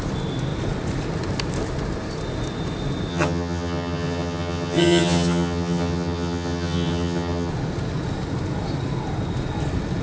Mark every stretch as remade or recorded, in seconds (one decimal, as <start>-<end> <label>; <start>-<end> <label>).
0.0-3.1 recorded; 3.1-7.5 remade; 7.5-10.0 recorded